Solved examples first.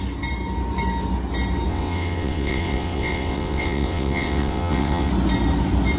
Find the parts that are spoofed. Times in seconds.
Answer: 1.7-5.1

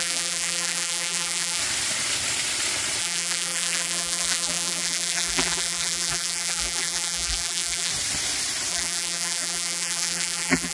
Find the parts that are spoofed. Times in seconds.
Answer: 0.0-1.6; 3.0-7.9; 8.7-10.7

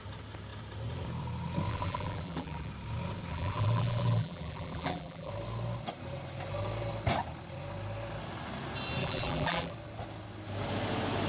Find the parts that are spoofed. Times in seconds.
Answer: 1.7-2.7; 3.3-5.3; 9.0-9.7

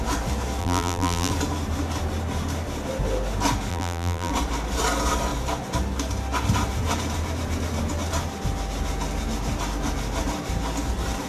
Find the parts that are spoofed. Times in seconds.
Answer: 0.6-1.3; 3.7-4.3